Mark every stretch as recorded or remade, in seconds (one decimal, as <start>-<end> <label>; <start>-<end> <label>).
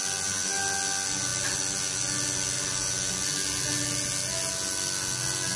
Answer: 0.0-5.6 recorded